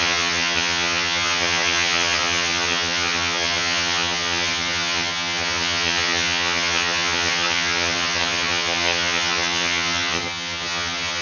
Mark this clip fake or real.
fake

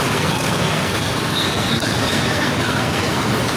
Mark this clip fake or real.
fake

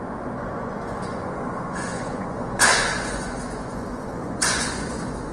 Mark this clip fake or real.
fake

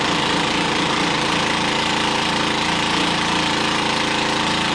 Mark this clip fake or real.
real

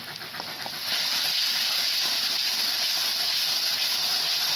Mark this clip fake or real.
real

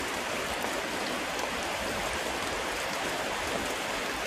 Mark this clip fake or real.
real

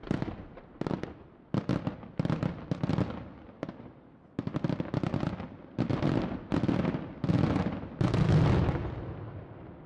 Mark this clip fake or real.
real